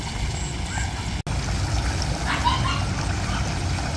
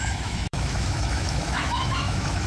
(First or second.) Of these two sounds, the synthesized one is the second